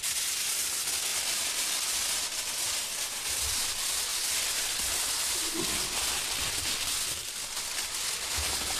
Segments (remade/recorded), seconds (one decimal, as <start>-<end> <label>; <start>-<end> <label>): 0.0-8.8 recorded

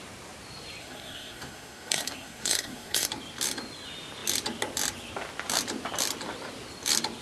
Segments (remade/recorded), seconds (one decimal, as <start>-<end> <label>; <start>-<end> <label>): 0.0-0.8 recorded; 0.8-3.1 remade; 3.1-7.2 recorded

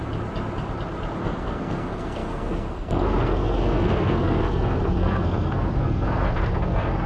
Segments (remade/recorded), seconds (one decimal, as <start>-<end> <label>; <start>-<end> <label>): 0.0-1.2 recorded; 1.2-7.1 remade

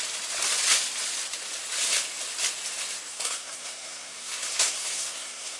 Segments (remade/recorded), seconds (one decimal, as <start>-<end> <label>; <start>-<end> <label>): 0.0-3.1 recorded; 3.1-5.6 remade

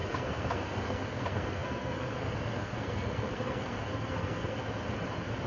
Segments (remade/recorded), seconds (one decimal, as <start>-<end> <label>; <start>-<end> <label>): 0.0-4.6 remade; 4.6-5.5 recorded

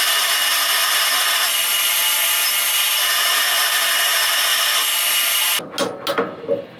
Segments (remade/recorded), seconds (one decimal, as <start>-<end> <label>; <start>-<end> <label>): 0.0-6.8 recorded

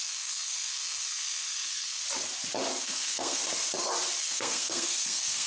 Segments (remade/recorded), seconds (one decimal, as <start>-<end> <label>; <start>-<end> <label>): 0.0-2.0 remade; 2.0-2.8 recorded; 2.8-3.4 remade; 3.4-4.2 recorded; 4.2-5.5 remade

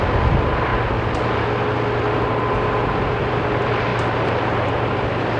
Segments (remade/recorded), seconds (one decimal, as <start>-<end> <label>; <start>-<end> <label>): 0.0-5.4 recorded